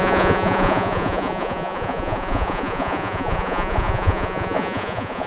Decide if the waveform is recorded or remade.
remade